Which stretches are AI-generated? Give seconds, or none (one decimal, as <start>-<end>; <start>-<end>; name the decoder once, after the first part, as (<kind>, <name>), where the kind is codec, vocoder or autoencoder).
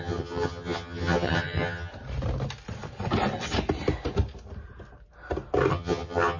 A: 0.0-1.9 (vocoder, HiFi-GAN); 5.7-6.4